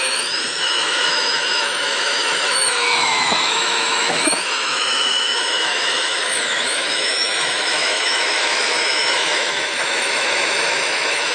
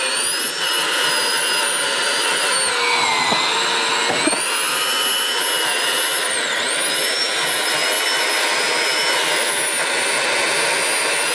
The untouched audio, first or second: second